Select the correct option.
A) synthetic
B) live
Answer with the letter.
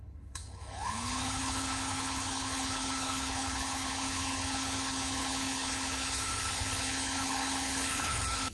A